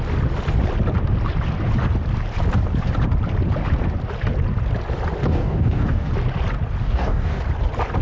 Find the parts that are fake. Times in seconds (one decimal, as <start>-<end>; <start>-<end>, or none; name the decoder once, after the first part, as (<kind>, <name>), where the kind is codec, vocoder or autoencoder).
5.2-6.1 (codec, DAC); 6.8-7.4